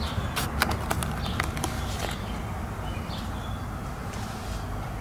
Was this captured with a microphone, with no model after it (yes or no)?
yes